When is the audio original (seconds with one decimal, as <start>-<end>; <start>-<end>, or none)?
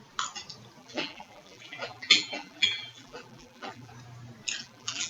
0.0-0.8; 3.9-4.6